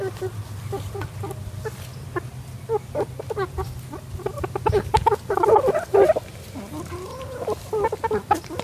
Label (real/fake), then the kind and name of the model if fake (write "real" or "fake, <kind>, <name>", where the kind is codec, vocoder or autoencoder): real